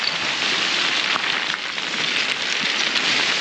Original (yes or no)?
yes